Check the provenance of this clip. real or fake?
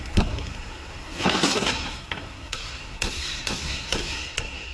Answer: fake